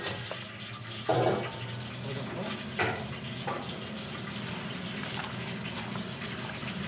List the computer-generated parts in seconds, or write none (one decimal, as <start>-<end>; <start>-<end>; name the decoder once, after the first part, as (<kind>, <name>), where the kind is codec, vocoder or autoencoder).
none